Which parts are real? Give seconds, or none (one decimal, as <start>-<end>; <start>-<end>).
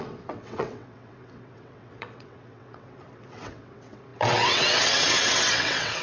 none